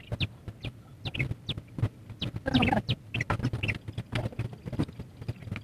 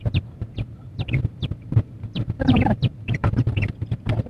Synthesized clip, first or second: second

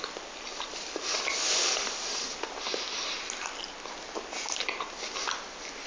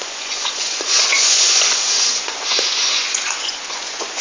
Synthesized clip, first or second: second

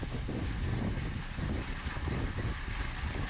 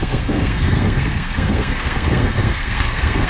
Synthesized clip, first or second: second